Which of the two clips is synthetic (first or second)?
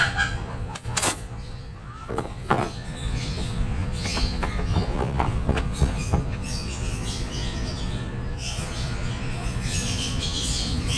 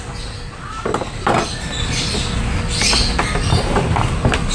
first